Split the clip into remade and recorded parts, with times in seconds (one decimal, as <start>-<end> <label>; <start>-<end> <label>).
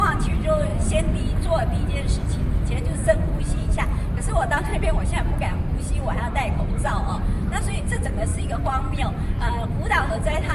0.0-0.7 remade; 0.7-2.9 recorded; 2.9-4.7 remade; 4.7-6.6 recorded; 6.6-8.3 remade; 8.3-10.1 recorded; 10.1-10.5 remade